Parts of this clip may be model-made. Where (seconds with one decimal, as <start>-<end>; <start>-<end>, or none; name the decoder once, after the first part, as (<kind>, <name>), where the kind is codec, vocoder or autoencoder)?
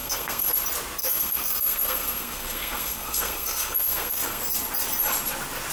0.0-0.5 (codec, SNAC); 1.0-4.4